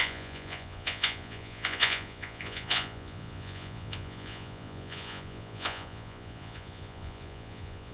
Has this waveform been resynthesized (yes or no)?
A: yes